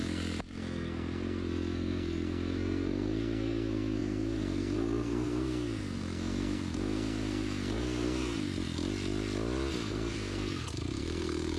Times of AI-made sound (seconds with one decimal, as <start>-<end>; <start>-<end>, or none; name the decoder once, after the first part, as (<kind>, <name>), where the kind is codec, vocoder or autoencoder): 0.0-8.5 (codec, SNAC); 9.7-11.6